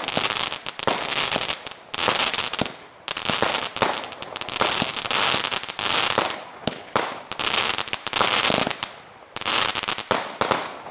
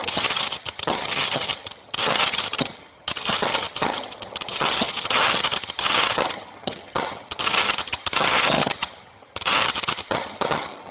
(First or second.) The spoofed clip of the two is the second